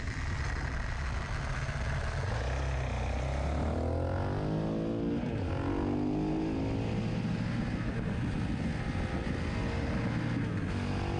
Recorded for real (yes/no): yes